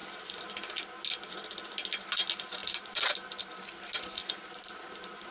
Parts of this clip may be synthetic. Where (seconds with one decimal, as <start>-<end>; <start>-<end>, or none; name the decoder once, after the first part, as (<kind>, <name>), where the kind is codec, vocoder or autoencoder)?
none